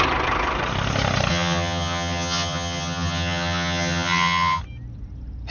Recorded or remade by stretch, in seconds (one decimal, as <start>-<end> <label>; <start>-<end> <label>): 0.0-1.3 recorded; 1.3-4.6 remade; 4.6-5.5 recorded